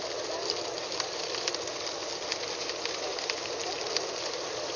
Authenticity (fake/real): real